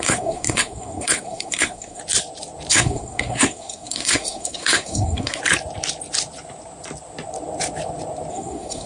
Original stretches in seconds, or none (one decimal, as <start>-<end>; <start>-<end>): 2.0-2.7; 5.4-8.3